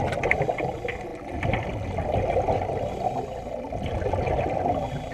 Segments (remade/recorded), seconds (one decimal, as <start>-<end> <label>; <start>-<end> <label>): 0.0-5.1 recorded